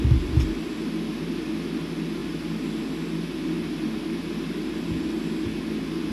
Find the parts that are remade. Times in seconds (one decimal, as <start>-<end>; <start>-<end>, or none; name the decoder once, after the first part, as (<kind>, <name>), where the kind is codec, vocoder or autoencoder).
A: none